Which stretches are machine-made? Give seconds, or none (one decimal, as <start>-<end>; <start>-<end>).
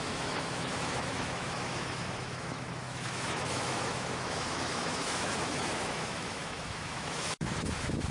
0.0-8.1